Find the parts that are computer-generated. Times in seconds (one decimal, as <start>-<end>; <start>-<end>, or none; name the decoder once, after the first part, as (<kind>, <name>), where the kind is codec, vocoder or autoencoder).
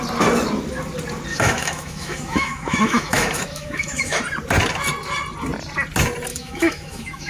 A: 1.3-4.2 (autoencoder, DAC-VAE); 6.3-7.3